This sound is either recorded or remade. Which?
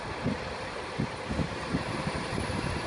remade